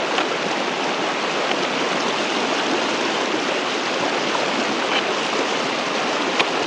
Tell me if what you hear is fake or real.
real